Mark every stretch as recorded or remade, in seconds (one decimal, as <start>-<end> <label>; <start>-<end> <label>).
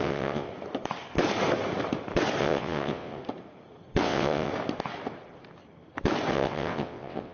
0.0-0.5 remade; 0.5-2.4 recorded; 2.4-3.2 remade; 3.2-4.0 recorded; 4.0-4.5 remade; 4.5-6.3 recorded; 6.3-7.3 remade